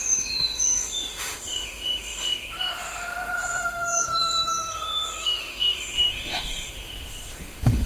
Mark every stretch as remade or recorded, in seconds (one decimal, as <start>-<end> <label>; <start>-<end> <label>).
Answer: 0.0-7.9 remade